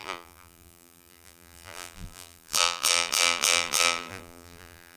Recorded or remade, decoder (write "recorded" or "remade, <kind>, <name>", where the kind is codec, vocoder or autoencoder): remade, vocoder, BigVGAN v2